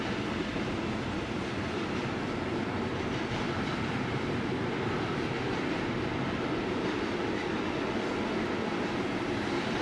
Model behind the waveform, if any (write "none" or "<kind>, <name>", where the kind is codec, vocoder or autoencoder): vocoder, BigVGAN v2